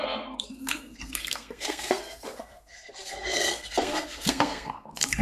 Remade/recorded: remade